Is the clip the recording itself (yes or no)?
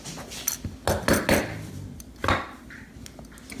yes